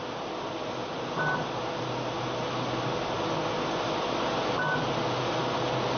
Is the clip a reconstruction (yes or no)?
no